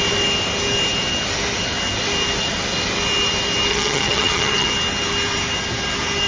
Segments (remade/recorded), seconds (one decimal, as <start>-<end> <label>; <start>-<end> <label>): 0.0-3.7 recorded; 3.7-4.7 remade; 4.7-6.3 recorded